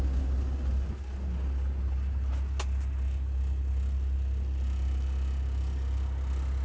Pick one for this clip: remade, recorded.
recorded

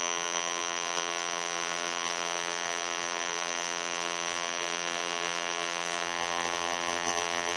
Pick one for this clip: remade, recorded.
remade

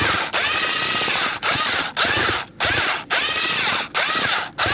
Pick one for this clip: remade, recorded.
recorded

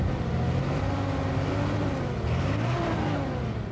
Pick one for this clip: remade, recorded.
recorded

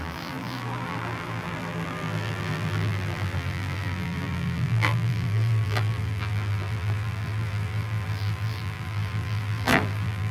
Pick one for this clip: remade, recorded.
remade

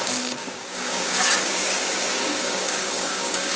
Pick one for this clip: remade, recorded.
remade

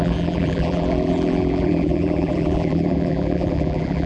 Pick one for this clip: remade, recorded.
remade